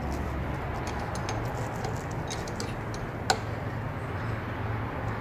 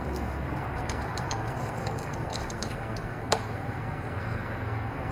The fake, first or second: second